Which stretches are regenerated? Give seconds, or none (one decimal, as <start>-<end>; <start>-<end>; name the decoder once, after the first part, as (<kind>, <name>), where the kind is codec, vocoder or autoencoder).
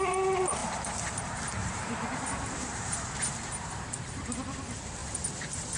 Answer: 0.0-5.8 (vocoder, BigVGAN v2)